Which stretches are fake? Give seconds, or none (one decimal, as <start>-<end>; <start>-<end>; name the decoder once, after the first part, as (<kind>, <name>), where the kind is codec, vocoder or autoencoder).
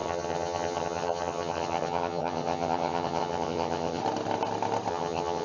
0.0-4.0 (vocoder, HiFi-GAN); 4.9-5.4